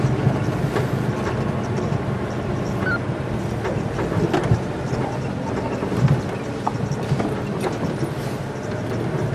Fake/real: real